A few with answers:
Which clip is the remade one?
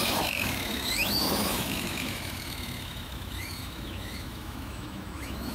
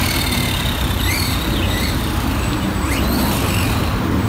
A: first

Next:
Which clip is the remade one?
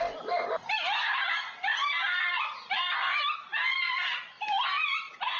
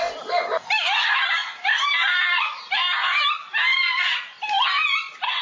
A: first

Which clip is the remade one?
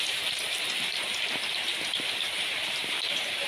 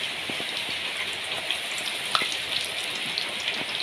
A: first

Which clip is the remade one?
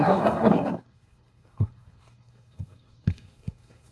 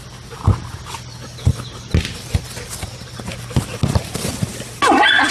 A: first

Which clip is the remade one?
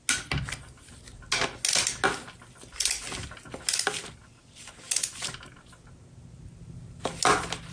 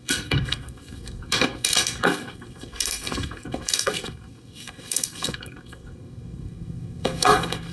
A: second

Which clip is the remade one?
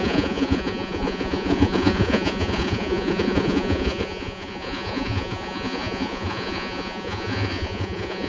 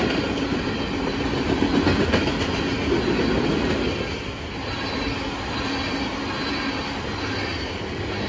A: first